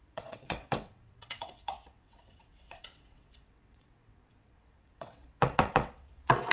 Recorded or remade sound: remade